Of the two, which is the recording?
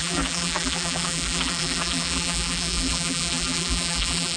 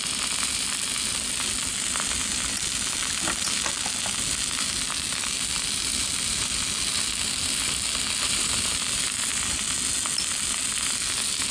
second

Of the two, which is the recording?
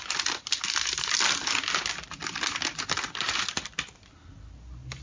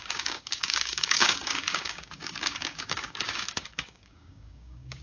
first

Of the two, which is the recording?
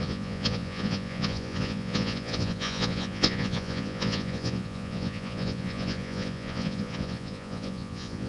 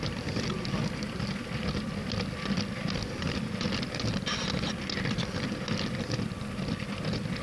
second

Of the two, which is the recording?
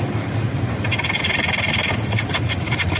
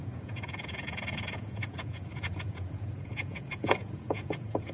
first